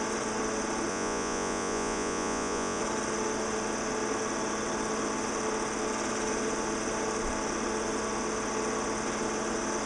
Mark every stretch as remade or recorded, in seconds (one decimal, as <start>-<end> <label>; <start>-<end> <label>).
0.0-0.9 recorded; 0.9-2.8 remade; 2.8-9.9 recorded